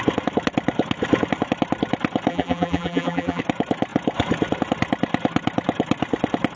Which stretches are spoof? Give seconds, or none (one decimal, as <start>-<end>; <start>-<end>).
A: 2.3-3.4